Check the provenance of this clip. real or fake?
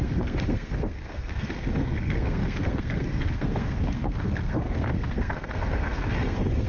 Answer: fake